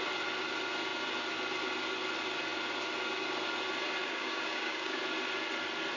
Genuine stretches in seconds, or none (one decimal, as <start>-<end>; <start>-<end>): 0.0-4.0; 5.0-6.0

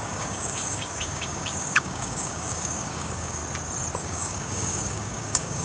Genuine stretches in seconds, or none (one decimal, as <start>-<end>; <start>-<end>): 3.4-4.0

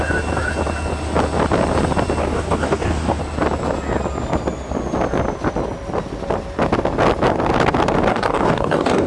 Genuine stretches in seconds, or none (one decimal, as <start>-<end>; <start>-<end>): 0.0-2.2; 3.2-8.1

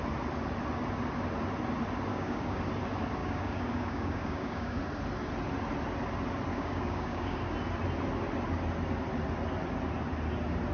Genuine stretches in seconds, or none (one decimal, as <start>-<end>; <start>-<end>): 0.0-2.1; 2.6-3.2; 4.8-6.5; 7.4-10.7